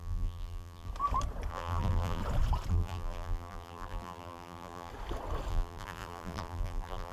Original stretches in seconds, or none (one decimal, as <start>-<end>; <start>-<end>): 0.9-1.5; 2.2-2.7; 4.9-5.5